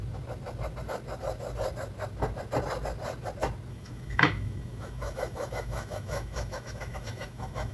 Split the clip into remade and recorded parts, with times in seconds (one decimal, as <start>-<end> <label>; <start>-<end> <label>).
0.0-3.7 recorded; 3.7-7.7 remade